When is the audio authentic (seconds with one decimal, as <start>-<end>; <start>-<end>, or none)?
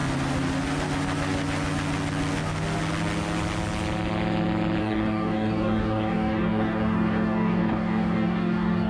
0.0-4.8